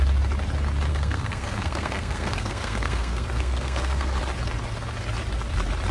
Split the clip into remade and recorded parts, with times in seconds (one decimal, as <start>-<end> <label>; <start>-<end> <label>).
0.0-0.9 recorded; 0.9-4.2 remade; 4.2-5.9 recorded